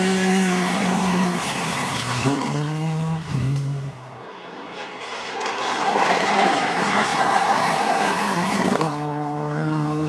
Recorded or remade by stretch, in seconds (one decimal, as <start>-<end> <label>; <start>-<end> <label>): 0.0-10.1 remade